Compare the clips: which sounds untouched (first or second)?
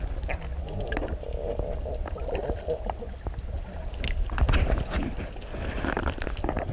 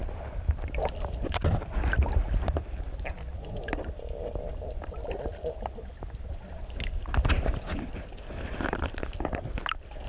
first